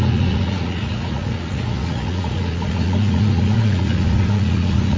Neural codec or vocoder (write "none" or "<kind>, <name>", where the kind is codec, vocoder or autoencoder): vocoder, Vocos